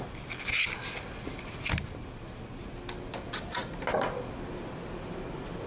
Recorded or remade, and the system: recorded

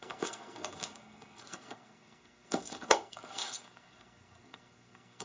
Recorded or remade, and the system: remade, codec, SNAC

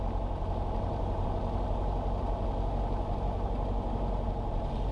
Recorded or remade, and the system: recorded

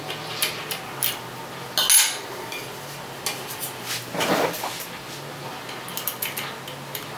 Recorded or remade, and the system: recorded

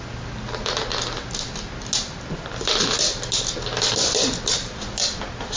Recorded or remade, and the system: recorded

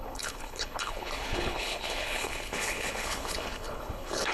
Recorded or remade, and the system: remade, codec, HILCodec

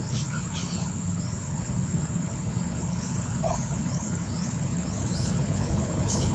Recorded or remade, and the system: remade, codec, HILCodec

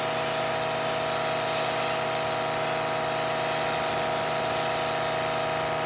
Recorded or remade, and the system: recorded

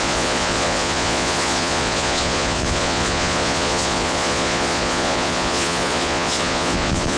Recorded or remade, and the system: remade, vocoder, Vocos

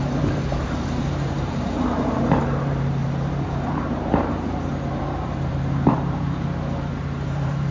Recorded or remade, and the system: remade, vocoder, BigVGAN v2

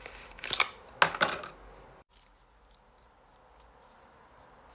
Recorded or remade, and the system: recorded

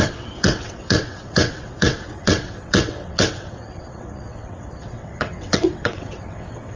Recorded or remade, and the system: remade, vocoder, WaveNeXt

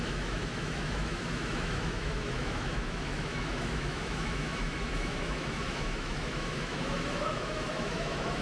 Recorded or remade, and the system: remade, autoencoder, DAC-VAE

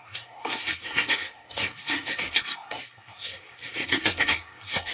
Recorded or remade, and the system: remade, codec, SNAC